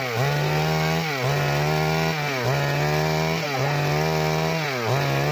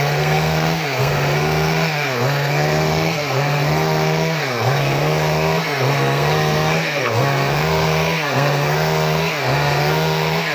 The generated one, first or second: second